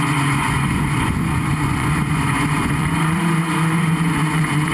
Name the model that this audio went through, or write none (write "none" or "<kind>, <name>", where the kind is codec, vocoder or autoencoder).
vocoder, Vocos